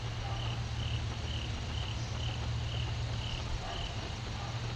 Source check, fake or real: real